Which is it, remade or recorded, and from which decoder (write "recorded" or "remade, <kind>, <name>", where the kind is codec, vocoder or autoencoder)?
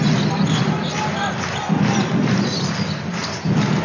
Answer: recorded